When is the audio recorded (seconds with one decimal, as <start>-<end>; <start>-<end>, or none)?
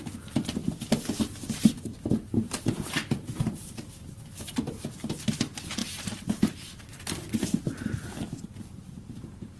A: 0.0-1.9; 3.9-5.8; 6.8-9.6